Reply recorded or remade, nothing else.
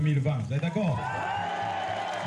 remade